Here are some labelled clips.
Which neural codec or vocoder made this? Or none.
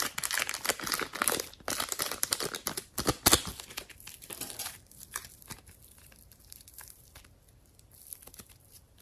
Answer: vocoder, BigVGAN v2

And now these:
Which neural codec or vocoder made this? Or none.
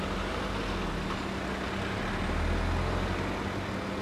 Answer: none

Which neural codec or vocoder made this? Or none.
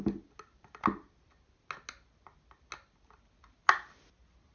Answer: none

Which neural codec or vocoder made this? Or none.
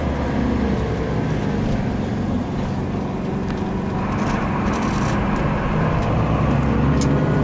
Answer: none